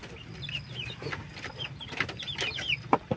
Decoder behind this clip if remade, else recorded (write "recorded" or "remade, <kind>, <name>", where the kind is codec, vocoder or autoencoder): recorded